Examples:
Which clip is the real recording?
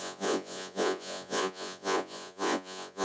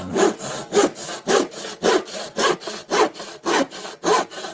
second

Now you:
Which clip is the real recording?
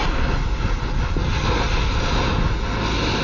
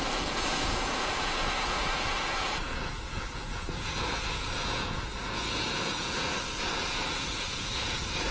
first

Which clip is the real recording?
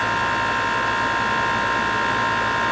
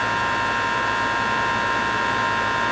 first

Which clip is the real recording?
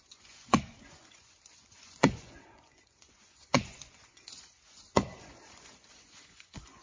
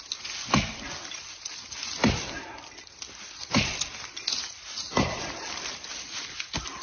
second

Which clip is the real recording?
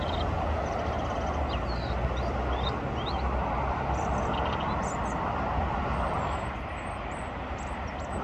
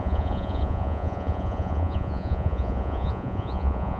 first